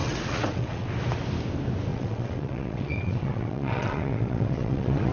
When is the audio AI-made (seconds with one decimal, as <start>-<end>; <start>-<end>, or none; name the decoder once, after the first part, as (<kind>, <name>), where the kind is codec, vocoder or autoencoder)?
0.0-0.9 (vocoder, WaveNeXt); 1.9-5.1